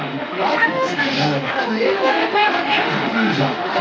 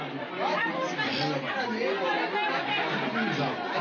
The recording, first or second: second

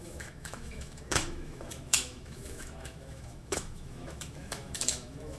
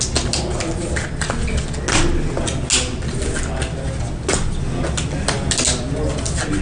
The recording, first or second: second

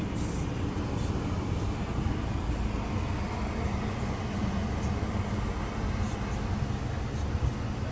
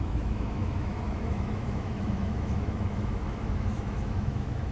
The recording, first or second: first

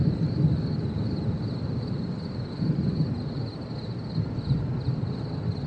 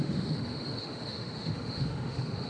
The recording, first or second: first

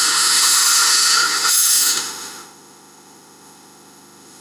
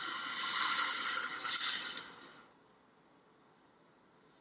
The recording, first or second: second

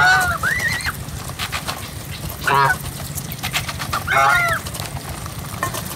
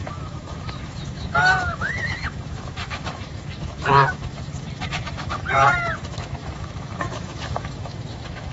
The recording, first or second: first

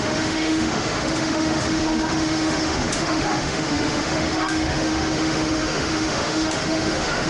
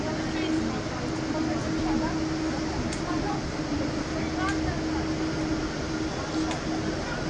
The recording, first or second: second